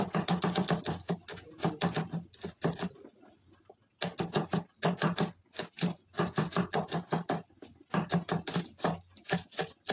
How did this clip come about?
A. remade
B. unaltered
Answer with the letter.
B